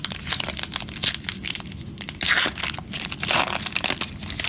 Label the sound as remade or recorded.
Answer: recorded